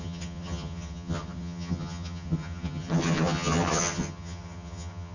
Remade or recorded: remade